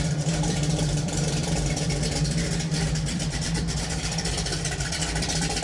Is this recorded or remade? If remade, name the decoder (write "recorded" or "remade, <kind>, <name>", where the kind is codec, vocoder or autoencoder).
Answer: remade, vocoder, BigVGAN v2